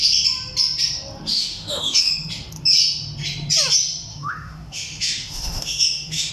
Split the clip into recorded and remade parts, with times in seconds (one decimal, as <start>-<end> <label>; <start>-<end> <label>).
0.0-1.3 recorded; 1.3-2.1 remade; 2.1-4.1 recorded; 4.1-6.3 remade